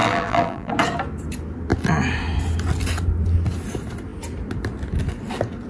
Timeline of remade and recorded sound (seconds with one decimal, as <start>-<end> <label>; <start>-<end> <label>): 0.0-0.7 remade; 0.7-5.7 recorded